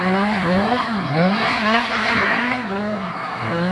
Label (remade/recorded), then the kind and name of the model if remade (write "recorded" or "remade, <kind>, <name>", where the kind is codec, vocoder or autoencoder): remade, codec, SNAC